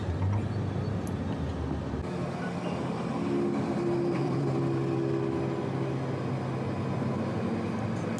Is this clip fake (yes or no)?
no